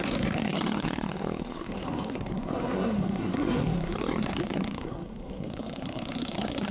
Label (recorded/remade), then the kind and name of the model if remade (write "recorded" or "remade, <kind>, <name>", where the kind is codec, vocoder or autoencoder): remade, codec, SNAC